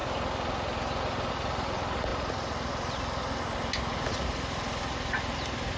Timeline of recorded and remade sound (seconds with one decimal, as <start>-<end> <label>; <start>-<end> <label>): 0.0-5.8 recorded